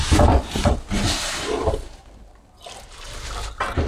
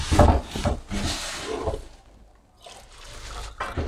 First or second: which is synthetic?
first